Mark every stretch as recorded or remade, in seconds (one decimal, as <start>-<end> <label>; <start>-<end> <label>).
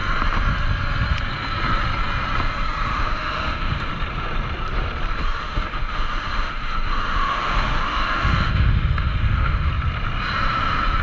0.0-2.9 recorded; 2.9-3.9 remade; 3.9-5.4 recorded; 5.4-9.7 remade; 9.7-11.0 recorded